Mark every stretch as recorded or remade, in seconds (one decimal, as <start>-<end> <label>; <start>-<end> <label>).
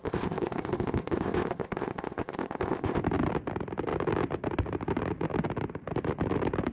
0.0-3.0 remade; 3.0-6.7 recorded